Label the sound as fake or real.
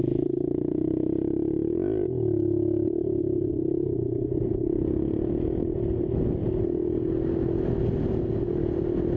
real